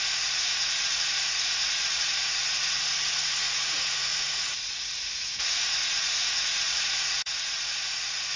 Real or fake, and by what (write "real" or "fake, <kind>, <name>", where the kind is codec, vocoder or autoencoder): fake, vocoder, Vocos